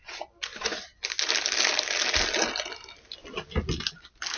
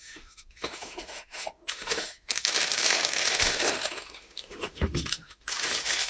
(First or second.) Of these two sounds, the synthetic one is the second